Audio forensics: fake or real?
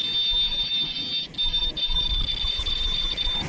real